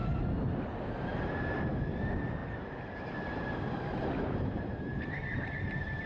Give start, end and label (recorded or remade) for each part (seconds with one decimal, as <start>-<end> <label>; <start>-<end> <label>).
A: 0.0-0.7 remade; 0.7-1.1 recorded; 1.1-1.7 remade; 1.7-2.4 recorded; 2.4-5.2 remade; 5.2-6.1 recorded